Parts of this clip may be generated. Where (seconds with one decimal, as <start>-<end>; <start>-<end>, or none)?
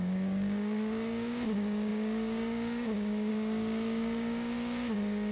0.0-5.3